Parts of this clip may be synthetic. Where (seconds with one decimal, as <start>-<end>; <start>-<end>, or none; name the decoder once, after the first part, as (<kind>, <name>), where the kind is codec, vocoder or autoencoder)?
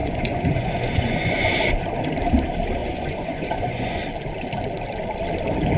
0.0-1.5 (vocoder, Vocos); 2.8-4.0